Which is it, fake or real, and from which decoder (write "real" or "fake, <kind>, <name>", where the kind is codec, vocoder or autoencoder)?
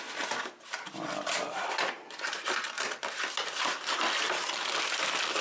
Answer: real